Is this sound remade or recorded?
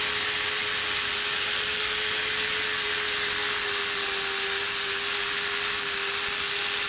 recorded